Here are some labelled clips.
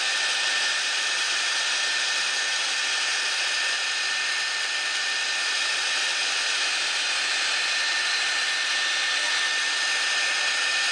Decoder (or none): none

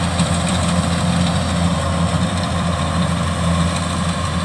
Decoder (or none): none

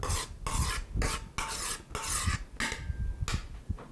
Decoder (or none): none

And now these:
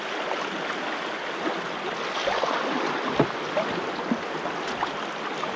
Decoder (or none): none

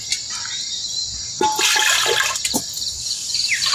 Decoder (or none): none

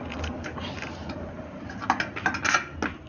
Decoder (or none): none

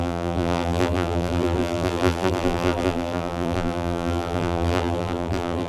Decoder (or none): vocoder, BigVGAN v2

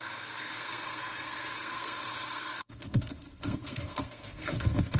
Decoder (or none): codec, SNAC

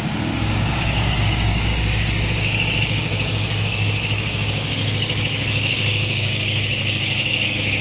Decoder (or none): codec, DAC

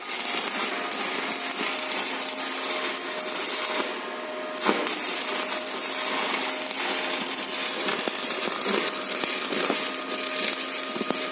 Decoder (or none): none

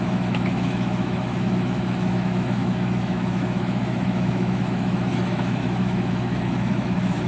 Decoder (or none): autoencoder, DAC-VAE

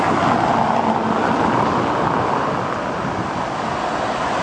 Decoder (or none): none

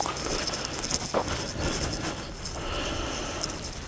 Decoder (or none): none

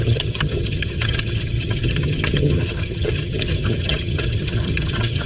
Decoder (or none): vocoder, HiFi-GAN